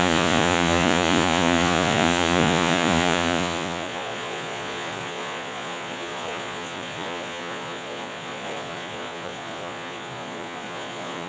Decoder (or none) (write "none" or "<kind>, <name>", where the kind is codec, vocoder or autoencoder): vocoder, Vocos